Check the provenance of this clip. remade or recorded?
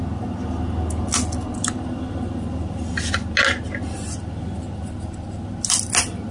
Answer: recorded